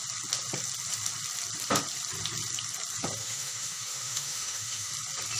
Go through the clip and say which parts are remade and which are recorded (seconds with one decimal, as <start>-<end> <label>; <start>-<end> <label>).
0.0-3.2 recorded; 3.2-4.9 remade; 4.9-5.4 recorded